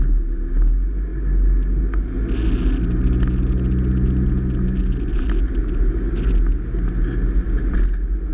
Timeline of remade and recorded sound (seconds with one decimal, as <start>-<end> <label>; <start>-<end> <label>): 0.0-8.3 recorded